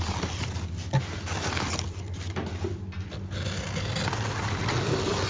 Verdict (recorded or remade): recorded